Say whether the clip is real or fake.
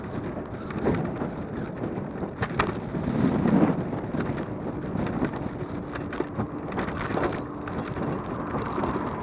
real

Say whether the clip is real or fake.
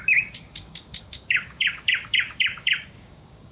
fake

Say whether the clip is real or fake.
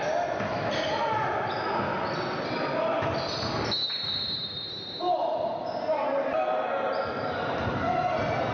real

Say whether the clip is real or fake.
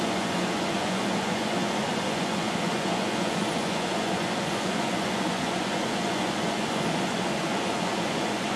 fake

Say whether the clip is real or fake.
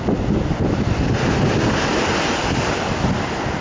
real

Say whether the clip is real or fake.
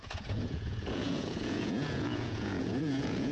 fake